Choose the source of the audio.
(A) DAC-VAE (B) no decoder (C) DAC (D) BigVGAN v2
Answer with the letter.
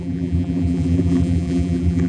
D